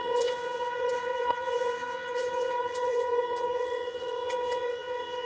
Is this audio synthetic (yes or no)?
yes